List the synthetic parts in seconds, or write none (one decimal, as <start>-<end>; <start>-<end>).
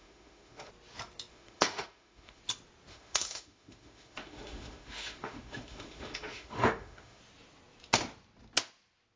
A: 0.0-0.7; 1.3-2.4; 2.9-7.2